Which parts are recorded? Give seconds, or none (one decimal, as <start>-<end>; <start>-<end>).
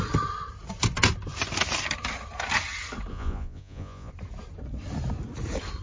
0.0-3.1; 4.1-5.8